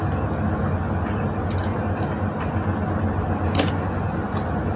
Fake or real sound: real